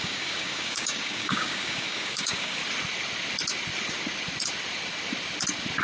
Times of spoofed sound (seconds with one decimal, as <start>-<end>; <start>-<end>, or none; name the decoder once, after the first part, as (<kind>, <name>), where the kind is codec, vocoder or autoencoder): 0.0-2.6 (codec, DAC)